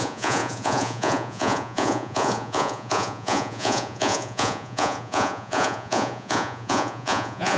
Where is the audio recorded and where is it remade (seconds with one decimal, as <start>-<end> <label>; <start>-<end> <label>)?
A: 0.0-7.6 remade